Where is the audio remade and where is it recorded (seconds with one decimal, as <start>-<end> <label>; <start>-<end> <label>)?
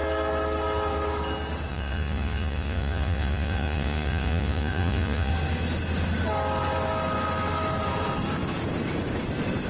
0.0-1.7 recorded; 1.7-5.3 remade; 5.3-9.7 recorded